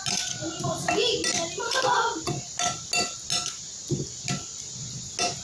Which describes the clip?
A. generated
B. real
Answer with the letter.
B